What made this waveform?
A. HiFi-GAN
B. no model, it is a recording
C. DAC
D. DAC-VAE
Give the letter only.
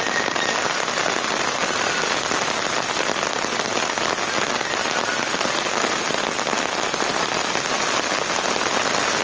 B